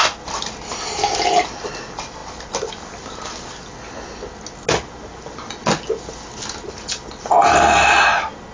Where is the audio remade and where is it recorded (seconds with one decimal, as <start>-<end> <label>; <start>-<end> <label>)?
0.0-8.5 recorded